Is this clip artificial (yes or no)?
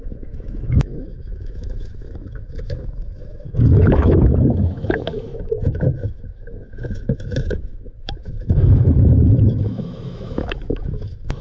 yes